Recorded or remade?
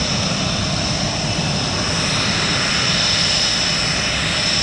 recorded